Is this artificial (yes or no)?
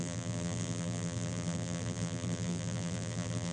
yes